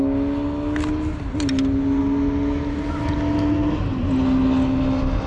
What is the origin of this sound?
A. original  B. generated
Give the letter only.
A